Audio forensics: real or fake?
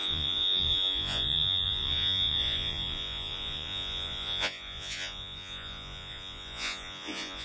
fake